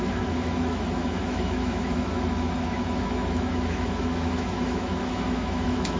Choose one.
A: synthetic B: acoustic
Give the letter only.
A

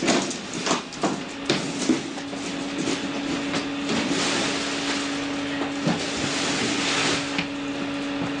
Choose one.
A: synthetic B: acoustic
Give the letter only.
B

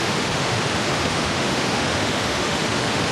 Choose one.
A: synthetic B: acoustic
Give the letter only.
A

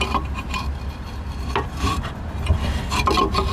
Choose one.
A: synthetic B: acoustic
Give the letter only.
B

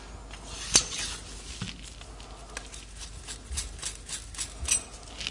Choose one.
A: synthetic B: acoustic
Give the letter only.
B